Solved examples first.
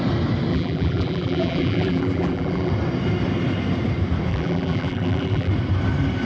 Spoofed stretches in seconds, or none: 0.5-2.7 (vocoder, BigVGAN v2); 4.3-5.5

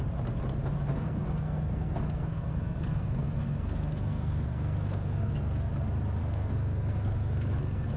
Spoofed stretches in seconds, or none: 0.9-5.7 (codec, SNAC); 6.2-8.0